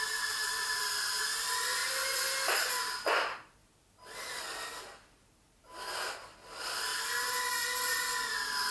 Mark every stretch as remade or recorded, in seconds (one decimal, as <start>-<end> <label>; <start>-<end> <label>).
0.0-0.4 recorded; 0.4-1.2 remade; 1.2-8.7 recorded